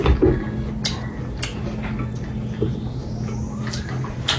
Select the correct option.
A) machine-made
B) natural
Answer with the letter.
B